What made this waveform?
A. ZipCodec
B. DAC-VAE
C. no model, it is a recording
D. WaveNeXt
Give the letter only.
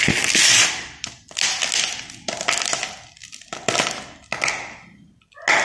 C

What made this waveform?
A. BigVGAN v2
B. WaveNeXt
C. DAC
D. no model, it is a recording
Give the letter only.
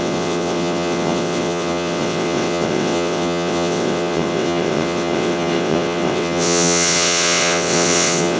B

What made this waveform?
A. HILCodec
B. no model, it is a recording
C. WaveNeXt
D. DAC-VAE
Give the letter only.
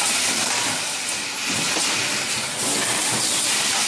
B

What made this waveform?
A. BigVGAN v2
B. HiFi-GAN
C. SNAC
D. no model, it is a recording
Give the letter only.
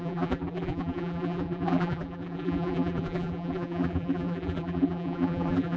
A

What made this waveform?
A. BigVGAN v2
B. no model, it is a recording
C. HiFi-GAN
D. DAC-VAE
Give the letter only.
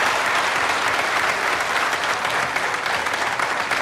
B